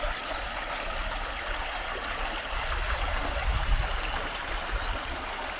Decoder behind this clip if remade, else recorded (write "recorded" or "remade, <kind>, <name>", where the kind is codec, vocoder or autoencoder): recorded